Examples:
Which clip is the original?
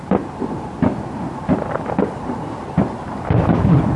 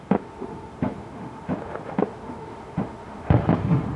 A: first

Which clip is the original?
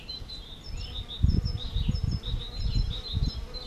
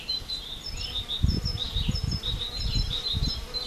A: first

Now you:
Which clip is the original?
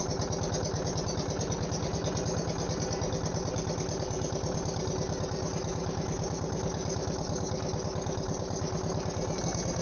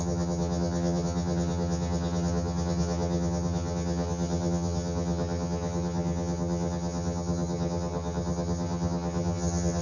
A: first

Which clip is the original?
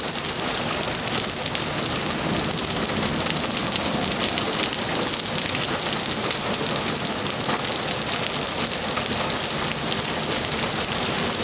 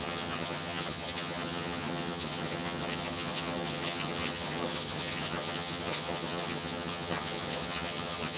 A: first